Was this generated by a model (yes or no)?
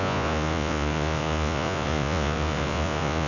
yes